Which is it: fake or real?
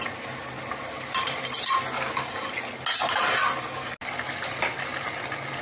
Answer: real